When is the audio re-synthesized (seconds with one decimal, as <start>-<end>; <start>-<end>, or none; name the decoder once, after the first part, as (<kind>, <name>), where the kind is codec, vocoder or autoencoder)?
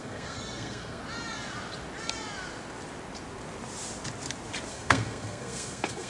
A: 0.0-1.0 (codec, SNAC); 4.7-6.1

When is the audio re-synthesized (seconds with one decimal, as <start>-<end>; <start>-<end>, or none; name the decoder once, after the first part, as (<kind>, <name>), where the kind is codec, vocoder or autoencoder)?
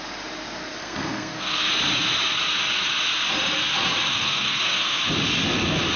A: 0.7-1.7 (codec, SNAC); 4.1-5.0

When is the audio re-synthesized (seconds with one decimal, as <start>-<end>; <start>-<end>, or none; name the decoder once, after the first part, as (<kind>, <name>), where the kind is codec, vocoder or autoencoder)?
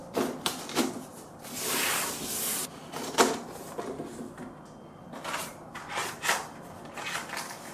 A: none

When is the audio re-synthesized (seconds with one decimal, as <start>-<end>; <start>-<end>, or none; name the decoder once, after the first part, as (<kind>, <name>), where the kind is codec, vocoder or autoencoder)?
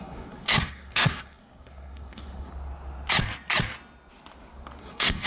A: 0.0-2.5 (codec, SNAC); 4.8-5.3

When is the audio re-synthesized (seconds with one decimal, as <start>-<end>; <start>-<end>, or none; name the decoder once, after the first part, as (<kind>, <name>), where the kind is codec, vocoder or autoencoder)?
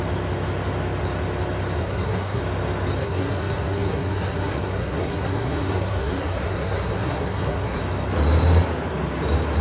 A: 1.8-2.4 (codec, SNAC); 3.0-7.8